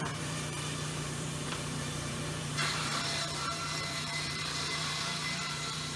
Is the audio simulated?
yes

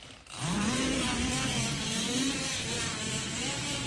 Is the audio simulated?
yes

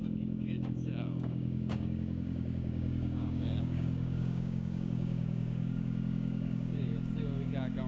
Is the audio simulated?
yes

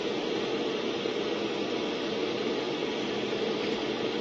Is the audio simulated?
no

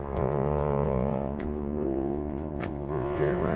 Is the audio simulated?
yes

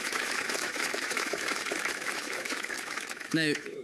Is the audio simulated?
yes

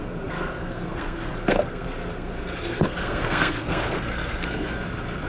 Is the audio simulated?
yes